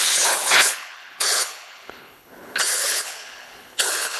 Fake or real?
fake